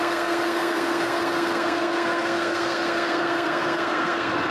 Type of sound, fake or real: fake